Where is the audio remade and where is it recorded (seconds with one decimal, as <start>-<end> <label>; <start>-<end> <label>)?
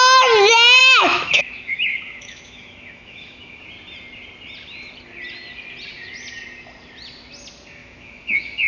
0.0-0.8 recorded; 0.8-3.6 remade; 3.6-7.8 recorded; 7.8-8.7 remade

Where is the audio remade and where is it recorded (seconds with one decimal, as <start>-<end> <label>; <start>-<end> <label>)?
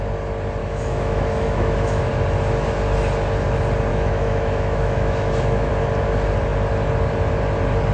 0.0-0.6 recorded; 0.6-2.1 remade; 2.1-3.9 recorded; 3.9-5.7 remade; 5.7-7.9 recorded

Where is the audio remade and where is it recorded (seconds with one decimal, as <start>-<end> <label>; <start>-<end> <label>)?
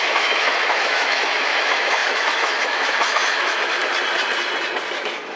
0.0-3.8 remade; 3.8-5.0 recorded; 5.0-5.4 remade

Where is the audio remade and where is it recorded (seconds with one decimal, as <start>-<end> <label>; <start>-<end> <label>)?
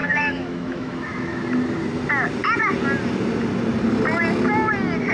0.0-1.4 remade; 1.4-5.1 recorded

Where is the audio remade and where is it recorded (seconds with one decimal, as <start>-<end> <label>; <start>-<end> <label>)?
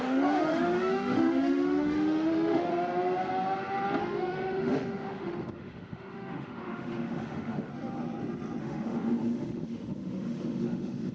0.0-2.7 remade; 2.7-4.0 recorded; 4.0-7.7 remade; 7.7-8.6 recorded; 8.6-11.1 remade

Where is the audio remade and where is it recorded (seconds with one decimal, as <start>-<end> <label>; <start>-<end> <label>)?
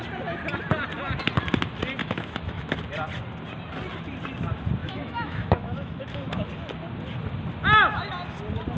0.0-2.0 recorded; 2.0-2.7 remade; 2.7-4.8 recorded; 4.8-6.5 remade; 6.5-8.8 recorded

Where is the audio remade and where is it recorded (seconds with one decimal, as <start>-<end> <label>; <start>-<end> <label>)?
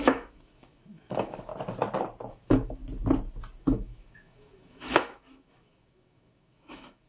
0.0-1.5 remade; 1.5-2.3 recorded; 2.3-2.8 remade; 2.8-3.6 recorded; 3.6-7.1 remade